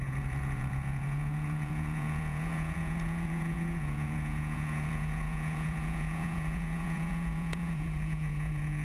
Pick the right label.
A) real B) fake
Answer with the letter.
B